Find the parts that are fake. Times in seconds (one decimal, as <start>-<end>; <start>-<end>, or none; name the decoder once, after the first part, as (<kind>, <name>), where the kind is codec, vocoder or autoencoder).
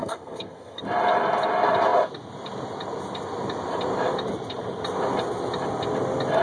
0.0-0.8 (codec, SNAC)